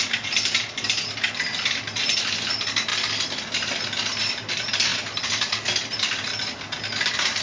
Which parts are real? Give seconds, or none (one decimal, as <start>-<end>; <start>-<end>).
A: 0.0-7.4